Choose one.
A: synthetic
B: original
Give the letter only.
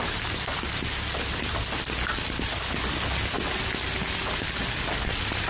B